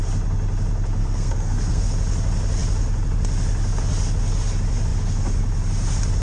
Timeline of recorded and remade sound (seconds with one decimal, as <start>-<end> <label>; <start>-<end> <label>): 0.0-1.0 recorded; 1.0-1.8 remade; 1.8-6.2 recorded